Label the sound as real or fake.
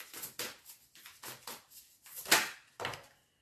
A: real